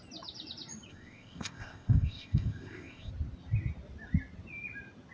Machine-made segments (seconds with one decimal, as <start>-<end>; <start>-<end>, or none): 0.9-3.1